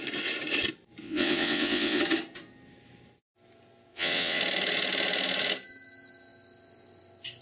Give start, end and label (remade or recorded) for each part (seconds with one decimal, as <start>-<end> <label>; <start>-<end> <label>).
0.0-1.0 recorded; 1.0-2.0 remade; 2.0-3.9 recorded; 3.9-4.4 remade; 4.4-7.4 recorded